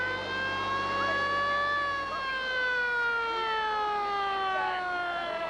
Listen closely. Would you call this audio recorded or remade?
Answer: recorded